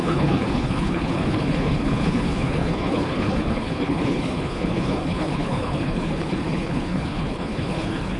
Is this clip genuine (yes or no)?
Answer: no